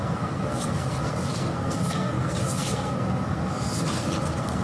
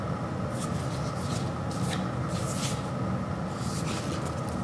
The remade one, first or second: first